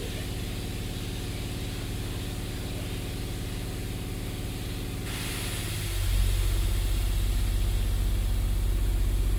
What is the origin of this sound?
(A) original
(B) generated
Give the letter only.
A